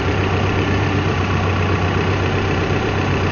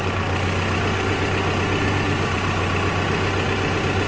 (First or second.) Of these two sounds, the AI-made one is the first